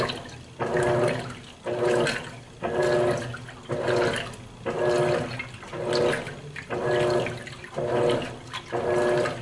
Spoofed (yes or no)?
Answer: no